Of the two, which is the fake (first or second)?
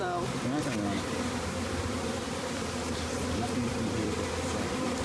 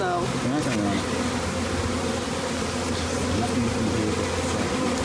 first